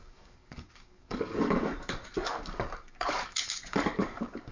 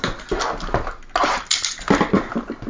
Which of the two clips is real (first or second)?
second